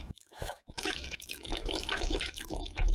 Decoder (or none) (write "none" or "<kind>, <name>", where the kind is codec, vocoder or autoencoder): autoencoder, DAC-VAE